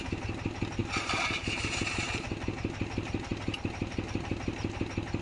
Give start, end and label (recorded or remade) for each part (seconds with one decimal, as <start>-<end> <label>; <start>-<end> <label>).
0.0-5.2 recorded